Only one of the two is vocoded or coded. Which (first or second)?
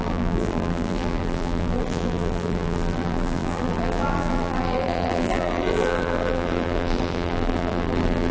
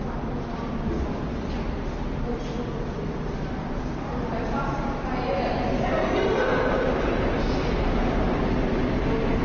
first